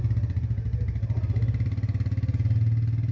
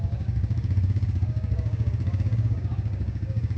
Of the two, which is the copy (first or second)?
second